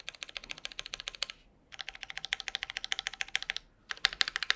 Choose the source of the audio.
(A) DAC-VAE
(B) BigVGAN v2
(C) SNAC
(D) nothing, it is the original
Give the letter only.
D